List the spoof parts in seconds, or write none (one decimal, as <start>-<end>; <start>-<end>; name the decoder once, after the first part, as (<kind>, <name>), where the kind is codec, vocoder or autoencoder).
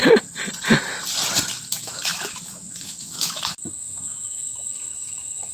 1.7-5.5 (autoencoder, DAC-VAE)